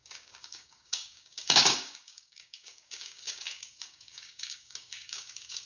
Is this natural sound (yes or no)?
no